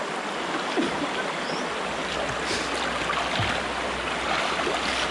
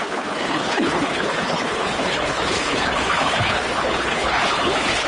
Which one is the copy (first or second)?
second